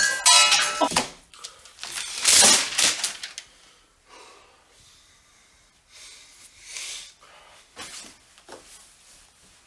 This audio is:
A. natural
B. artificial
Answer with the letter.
A